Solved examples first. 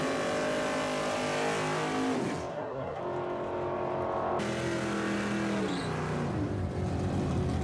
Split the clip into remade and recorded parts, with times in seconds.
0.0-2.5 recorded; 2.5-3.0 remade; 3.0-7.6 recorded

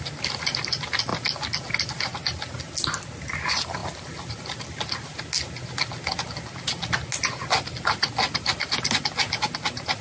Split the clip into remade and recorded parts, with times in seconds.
0.0-10.0 recorded

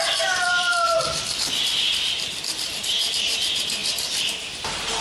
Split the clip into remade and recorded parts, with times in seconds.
0.0-5.0 remade

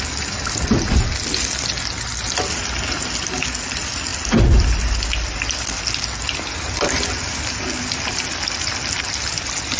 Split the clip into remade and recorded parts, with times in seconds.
0.0-9.8 recorded

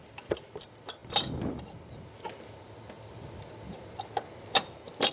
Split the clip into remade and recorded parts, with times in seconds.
0.0-5.1 recorded